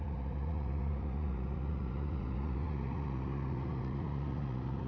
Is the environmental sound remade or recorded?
remade